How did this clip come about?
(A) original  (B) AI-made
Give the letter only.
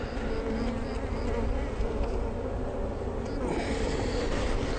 A